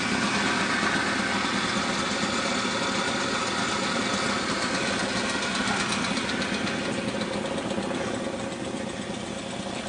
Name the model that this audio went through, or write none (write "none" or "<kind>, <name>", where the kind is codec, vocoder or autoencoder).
none